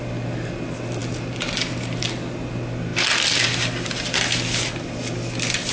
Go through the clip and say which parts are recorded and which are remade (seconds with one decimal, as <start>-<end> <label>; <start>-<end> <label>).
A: 0.0-5.7 recorded